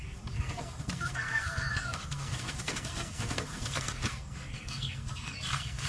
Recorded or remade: remade